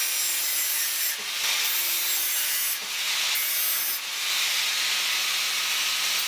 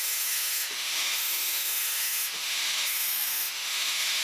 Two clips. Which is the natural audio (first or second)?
first